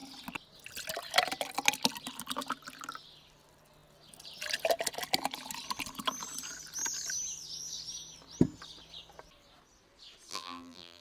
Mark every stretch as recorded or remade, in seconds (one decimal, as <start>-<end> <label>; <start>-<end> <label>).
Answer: 0.0-10.3 recorded; 10.3-11.0 remade